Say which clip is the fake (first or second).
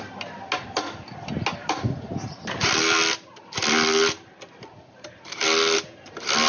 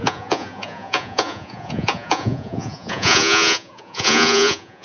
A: second